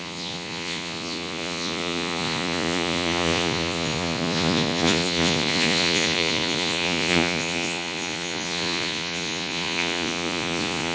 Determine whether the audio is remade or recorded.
remade